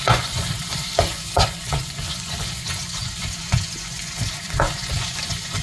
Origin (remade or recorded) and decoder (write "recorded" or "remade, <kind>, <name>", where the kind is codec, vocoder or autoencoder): remade, vocoder, Vocos